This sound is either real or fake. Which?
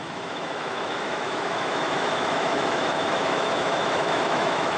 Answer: fake